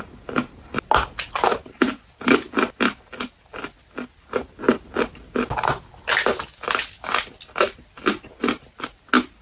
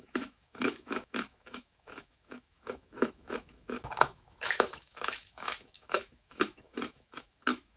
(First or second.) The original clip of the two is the first